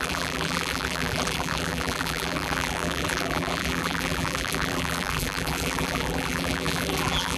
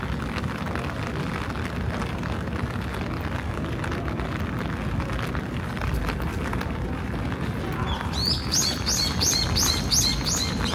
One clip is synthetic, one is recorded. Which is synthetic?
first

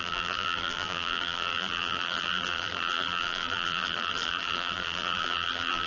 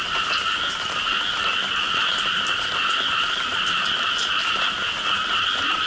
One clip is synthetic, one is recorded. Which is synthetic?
first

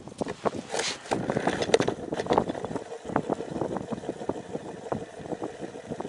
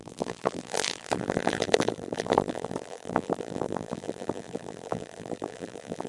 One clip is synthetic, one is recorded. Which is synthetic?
second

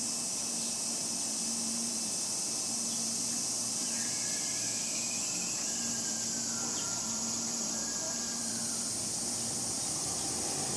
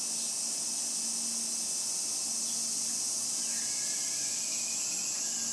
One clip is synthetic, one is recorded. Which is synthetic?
first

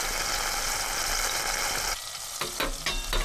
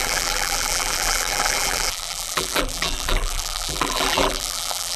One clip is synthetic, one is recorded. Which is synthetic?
second